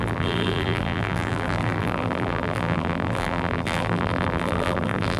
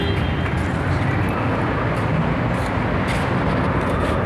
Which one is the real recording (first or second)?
second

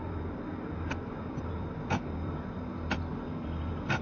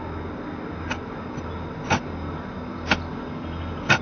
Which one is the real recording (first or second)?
second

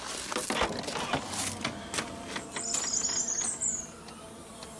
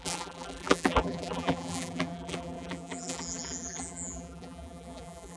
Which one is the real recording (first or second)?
first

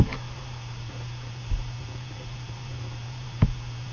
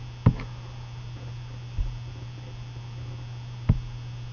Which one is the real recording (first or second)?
second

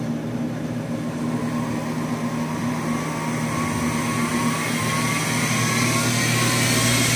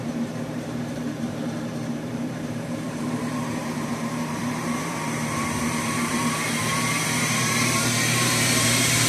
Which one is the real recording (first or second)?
first